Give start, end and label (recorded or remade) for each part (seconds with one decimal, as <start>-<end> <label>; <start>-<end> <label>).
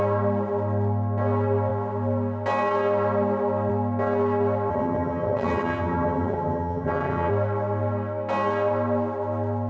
0.0-4.7 recorded; 4.7-7.3 remade; 7.3-9.7 recorded